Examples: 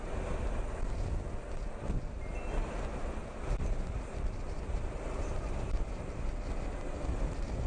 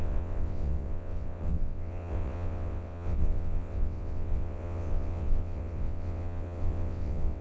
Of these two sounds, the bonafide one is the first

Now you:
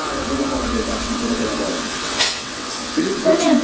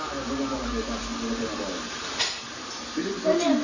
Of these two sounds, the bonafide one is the second